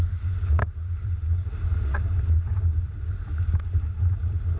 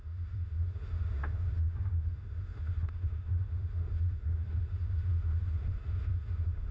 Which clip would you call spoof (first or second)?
second